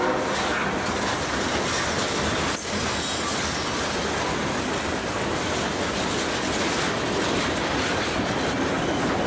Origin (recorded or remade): recorded